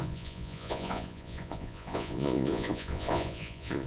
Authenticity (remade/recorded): remade